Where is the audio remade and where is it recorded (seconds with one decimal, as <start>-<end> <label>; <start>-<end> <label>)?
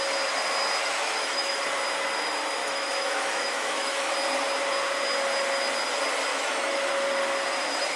0.0-0.8 recorded; 0.8-1.6 remade; 1.6-2.6 recorded; 2.6-4.1 remade; 4.1-6.3 recorded; 6.3-6.9 remade; 6.9-8.0 recorded